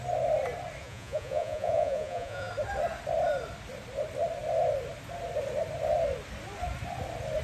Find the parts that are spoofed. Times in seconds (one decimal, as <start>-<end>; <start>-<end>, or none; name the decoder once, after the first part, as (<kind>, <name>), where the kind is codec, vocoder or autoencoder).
0.8-2.5 (vocoder, Vocos)